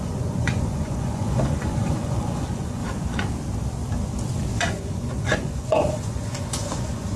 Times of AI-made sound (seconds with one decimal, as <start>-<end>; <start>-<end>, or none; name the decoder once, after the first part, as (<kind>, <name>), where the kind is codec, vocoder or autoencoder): 0.0-2.8 (vocoder, Vocos); 4.6-7.2